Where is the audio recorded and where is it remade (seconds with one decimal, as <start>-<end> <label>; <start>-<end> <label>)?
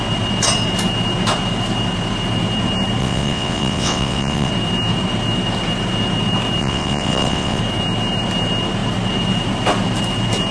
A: 0.0-3.0 recorded; 3.0-4.5 remade; 4.5-6.6 recorded; 6.6-7.6 remade; 7.6-10.5 recorded